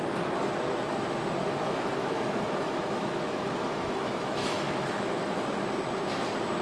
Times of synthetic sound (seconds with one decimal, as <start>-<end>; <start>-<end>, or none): 1.4-5.4